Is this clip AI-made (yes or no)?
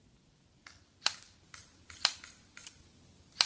no